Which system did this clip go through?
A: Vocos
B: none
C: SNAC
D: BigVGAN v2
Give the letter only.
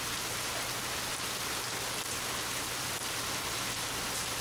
B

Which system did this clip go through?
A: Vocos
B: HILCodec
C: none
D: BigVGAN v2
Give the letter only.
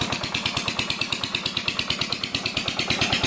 C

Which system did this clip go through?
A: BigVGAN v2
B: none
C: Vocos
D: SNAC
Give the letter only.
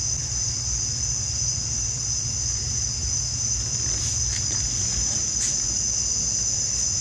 B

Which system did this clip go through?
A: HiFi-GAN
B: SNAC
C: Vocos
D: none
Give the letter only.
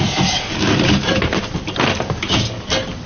D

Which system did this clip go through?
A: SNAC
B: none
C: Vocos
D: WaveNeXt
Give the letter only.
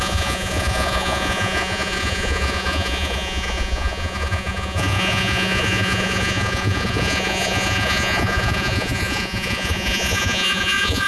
C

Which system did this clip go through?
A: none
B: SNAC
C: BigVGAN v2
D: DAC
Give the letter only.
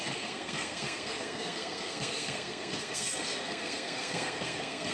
B